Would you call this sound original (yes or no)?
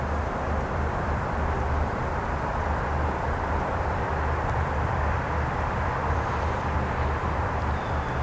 no